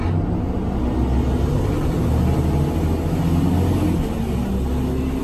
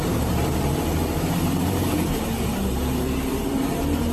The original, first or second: first